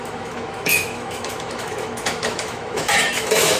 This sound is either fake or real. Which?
fake